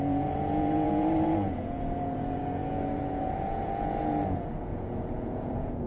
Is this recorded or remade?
remade